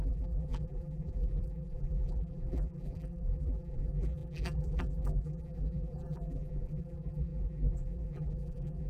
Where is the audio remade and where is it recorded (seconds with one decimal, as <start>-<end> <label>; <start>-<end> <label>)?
0.0-8.9 remade